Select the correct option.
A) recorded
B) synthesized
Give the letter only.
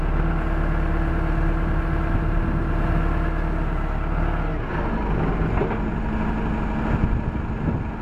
A